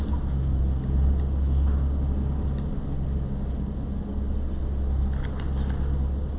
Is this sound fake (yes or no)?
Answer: no